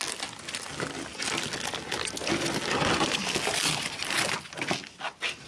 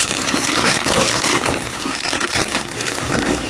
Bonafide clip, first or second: first